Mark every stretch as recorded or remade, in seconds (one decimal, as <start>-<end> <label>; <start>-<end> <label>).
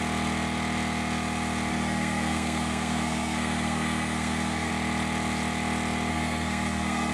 0.0-1.7 recorded; 1.7-4.7 remade; 4.7-6.1 recorded; 6.1-7.1 remade